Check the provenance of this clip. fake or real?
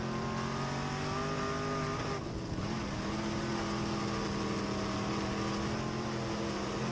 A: real